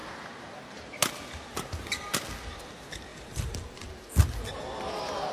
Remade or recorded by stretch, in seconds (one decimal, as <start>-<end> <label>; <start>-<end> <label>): 0.0-3.1 recorded; 3.1-4.0 remade; 4.0-5.3 recorded